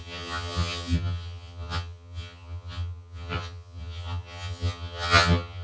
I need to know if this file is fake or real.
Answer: fake